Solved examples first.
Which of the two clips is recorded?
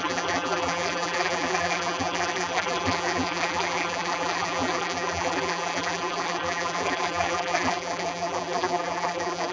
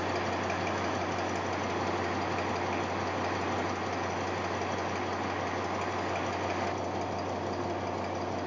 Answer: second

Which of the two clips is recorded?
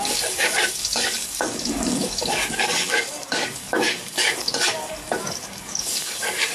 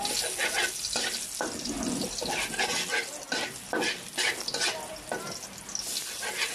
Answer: second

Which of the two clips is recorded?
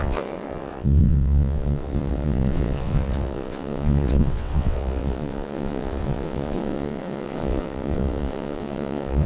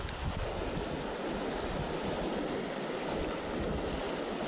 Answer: second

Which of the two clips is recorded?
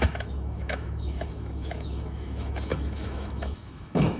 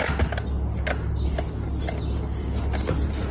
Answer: second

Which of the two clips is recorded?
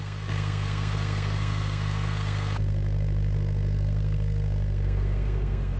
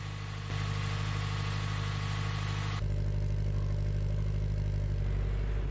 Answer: second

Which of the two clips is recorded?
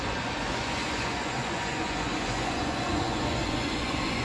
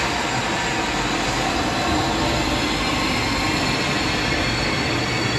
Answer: second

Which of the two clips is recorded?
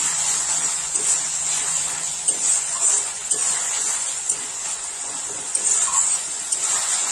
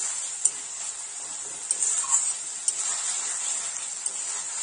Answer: second